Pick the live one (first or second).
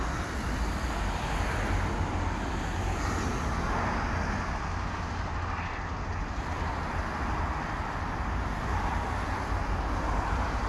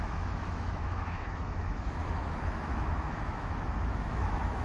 first